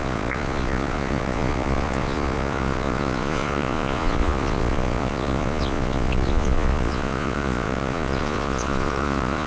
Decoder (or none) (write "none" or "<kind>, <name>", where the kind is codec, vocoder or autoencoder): vocoder, Vocos